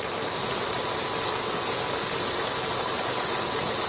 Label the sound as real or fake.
real